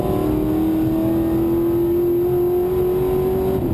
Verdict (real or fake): real